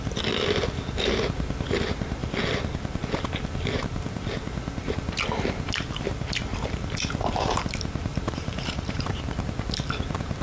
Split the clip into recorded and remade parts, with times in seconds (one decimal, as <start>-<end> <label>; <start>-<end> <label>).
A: 0.0-6.5 recorded; 6.5-7.7 remade; 7.7-8.1 recorded; 8.1-9.2 remade; 9.2-10.4 recorded